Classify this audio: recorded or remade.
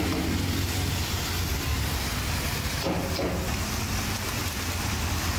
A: recorded